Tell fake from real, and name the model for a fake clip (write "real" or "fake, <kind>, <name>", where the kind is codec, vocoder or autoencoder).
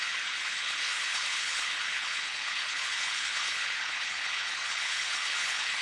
fake, codec, HILCodec